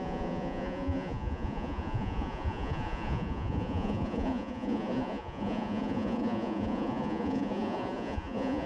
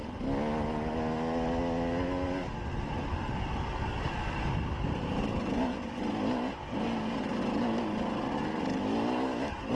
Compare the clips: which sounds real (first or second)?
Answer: second